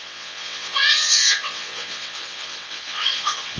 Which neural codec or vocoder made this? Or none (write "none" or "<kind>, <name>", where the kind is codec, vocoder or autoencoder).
vocoder, WaveNeXt